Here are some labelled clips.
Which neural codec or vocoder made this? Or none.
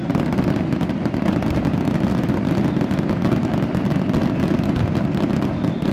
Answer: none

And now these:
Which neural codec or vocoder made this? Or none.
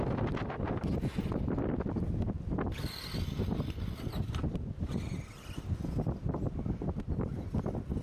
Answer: none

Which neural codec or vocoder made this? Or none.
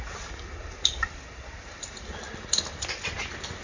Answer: none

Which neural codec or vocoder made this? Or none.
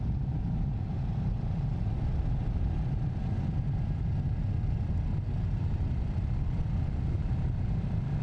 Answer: none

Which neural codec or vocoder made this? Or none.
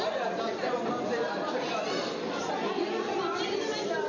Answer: none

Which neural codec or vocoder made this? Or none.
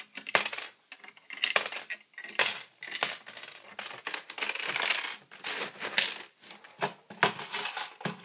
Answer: none